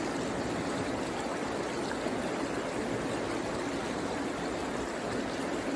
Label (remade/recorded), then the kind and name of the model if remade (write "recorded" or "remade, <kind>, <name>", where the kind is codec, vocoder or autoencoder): recorded